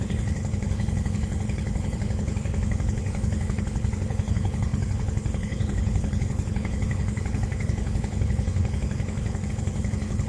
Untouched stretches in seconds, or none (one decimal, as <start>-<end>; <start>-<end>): none